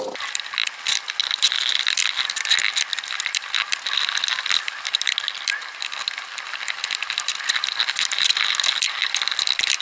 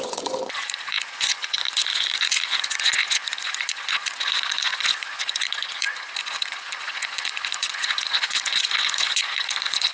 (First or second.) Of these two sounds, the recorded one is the first